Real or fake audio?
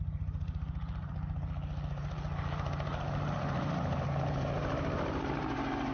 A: fake